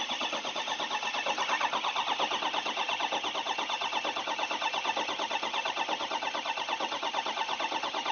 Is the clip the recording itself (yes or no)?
yes